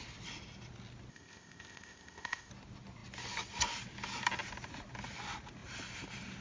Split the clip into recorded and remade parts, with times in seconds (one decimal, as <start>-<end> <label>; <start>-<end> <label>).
0.0-1.1 recorded; 1.1-2.5 remade; 2.5-6.4 recorded